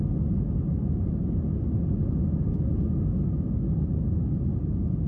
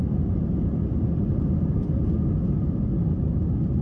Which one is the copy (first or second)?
second